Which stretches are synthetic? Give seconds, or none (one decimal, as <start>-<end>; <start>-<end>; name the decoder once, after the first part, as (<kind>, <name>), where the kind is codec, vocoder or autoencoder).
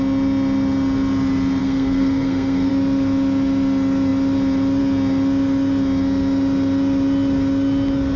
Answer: 1.6-2.7 (codec, SNAC)